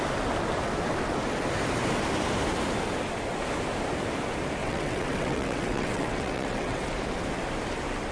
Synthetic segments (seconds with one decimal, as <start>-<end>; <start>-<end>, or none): 4.6-6.9